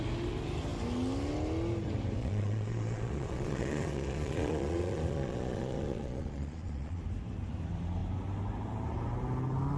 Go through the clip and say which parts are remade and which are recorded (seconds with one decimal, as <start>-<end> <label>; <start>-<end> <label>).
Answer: 0.0-2.2 recorded; 2.2-7.0 remade; 7.0-9.8 recorded